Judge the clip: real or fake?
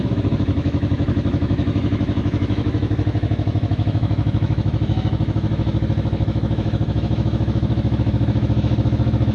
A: fake